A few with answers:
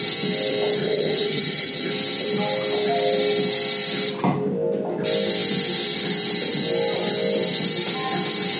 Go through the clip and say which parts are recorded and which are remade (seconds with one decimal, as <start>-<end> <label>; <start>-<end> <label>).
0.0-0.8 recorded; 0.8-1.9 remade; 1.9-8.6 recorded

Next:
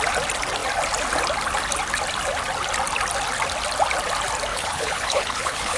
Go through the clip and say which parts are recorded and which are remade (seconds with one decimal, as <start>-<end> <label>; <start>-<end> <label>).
0.0-4.5 recorded; 4.5-5.8 remade

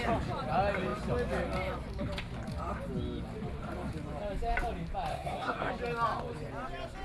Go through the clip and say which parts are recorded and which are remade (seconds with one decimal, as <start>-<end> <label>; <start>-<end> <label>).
0.0-5.1 recorded; 5.1-5.7 remade; 5.7-7.0 recorded

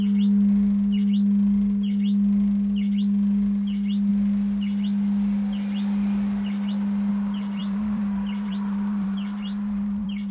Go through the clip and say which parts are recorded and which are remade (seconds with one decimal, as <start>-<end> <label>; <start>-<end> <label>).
0.0-7.6 recorded; 7.6-10.3 remade

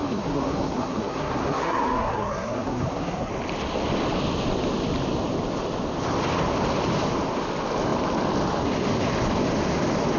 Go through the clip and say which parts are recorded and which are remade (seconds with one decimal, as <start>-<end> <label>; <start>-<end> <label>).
0.0-3.3 remade; 3.3-10.2 recorded

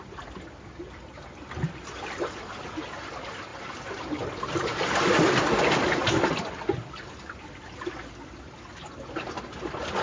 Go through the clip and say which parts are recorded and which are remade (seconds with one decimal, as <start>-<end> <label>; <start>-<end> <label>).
0.0-10.0 recorded